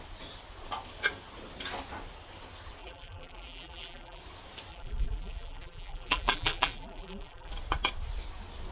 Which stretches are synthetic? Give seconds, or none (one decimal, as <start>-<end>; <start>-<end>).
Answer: 2.8-4.2; 4.7-7.5